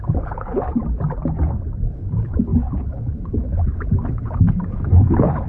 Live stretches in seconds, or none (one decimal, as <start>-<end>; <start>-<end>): 0.8-1.9